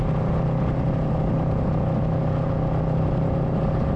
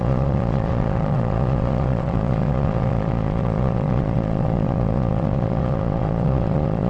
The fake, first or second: second